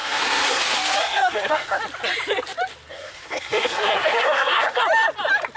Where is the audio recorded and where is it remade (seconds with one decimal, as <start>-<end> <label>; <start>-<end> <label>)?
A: 0.0-0.6 remade; 0.6-1.0 recorded; 1.0-1.8 remade; 1.8-2.9 recorded; 2.9-4.8 remade; 4.8-5.6 recorded